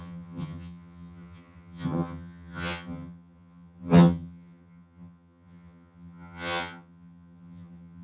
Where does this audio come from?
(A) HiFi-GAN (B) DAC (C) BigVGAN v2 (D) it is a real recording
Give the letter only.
A